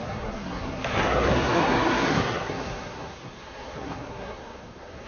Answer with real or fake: fake